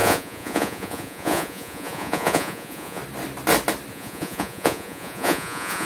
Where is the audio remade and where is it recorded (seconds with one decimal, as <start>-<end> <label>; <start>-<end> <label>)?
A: 0.0-3.0 remade; 3.0-3.9 recorded; 3.9-5.8 remade